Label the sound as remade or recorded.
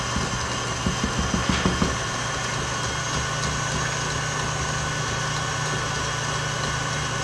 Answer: recorded